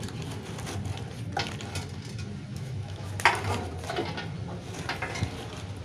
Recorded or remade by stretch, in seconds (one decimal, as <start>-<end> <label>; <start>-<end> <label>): 0.0-2.5 recorded; 2.5-3.1 remade; 3.1-5.8 recorded